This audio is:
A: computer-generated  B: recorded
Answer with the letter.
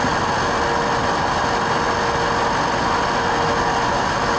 B